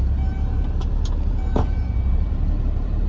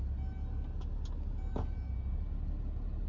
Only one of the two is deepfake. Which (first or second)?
first